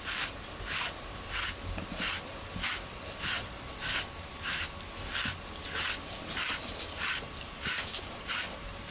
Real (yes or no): yes